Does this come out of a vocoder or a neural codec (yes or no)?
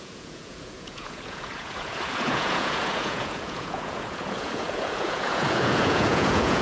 yes